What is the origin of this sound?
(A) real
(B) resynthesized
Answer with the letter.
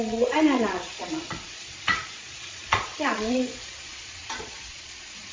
B